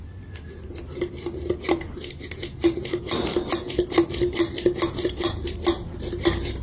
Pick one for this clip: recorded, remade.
recorded